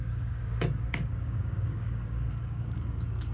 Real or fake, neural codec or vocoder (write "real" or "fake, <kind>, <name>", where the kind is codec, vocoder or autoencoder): fake, codec, DAC